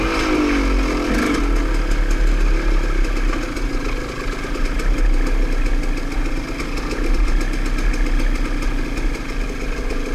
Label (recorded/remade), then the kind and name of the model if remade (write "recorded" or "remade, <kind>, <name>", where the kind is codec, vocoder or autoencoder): recorded